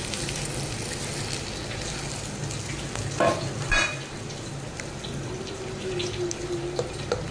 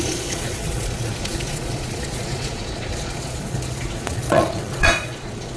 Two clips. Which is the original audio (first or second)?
first